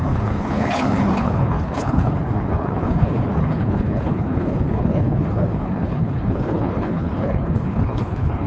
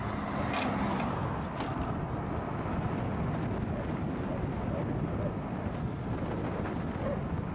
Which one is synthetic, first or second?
first